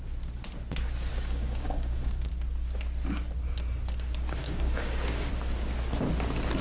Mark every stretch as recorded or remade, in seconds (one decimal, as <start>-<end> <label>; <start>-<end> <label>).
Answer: 0.0-1.1 recorded; 1.1-2.3 remade; 2.3-4.4 recorded; 4.4-5.3 remade; 5.3-6.6 recorded